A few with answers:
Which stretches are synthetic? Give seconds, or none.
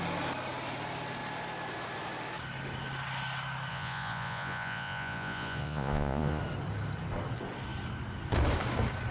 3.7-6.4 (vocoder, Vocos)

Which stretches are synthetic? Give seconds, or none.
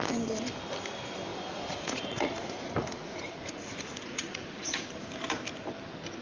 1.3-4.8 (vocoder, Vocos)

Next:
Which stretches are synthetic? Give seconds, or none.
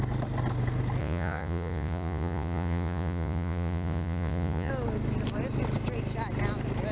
1.0-4.7 (vocoder, Vocos)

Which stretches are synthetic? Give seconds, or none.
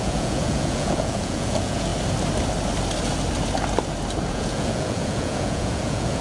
0.0-1.9 (vocoder, Vocos); 4.3-6.2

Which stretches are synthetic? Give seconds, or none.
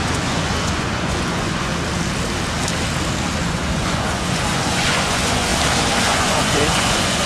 0.0-1.7 (vocoder, Vocos); 3.4-5.5; 6.0-7.3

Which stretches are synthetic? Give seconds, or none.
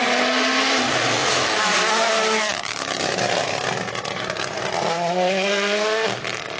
none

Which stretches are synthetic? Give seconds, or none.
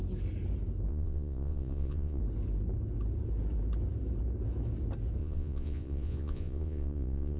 0.9-2.2 (vocoder, Vocos); 5.2-7.4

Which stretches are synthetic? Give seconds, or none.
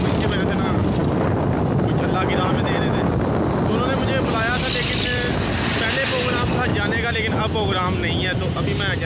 none